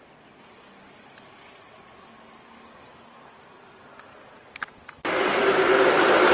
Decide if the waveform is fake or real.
real